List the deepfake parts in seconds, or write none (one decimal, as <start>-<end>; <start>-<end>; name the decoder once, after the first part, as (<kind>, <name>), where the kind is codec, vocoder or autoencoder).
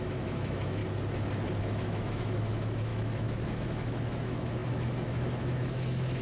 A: 0.0-0.8 (autoencoder, DAC-VAE); 1.6-6.2